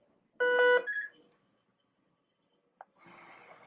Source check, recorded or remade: recorded